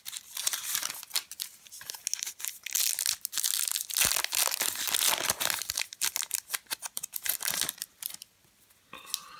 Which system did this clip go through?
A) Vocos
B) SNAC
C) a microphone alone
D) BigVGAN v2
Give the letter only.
C